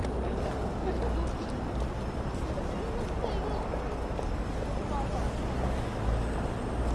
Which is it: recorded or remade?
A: recorded